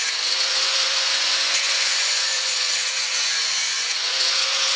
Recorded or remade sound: remade